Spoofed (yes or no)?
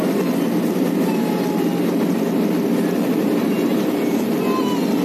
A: no